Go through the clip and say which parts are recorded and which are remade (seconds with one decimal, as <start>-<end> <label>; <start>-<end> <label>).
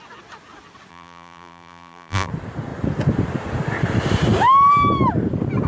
0.0-0.9 recorded; 0.9-2.3 remade; 2.3-5.7 recorded